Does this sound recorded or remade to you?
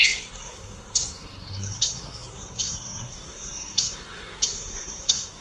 remade